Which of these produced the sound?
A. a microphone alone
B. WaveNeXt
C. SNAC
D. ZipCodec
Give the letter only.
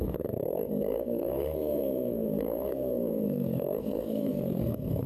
C